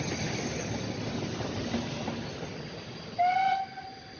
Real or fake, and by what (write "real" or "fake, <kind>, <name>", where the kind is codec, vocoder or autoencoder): real